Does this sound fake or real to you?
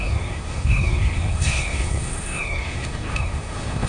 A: fake